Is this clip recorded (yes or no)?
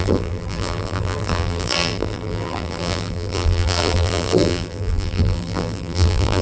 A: no